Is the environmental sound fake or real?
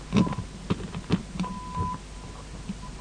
real